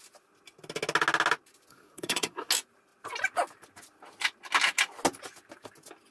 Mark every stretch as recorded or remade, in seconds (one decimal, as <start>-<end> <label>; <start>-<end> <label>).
0.0-1.7 recorded; 1.7-2.5 remade; 2.5-6.1 recorded